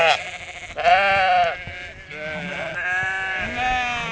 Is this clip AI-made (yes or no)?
no